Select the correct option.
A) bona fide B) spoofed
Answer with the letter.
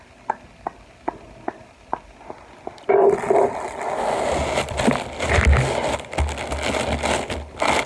A